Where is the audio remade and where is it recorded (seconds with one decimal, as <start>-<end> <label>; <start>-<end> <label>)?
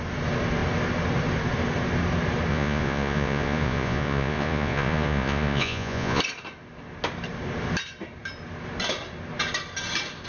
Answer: 0.0-2.5 recorded; 2.5-6.2 remade; 6.2-10.3 recorded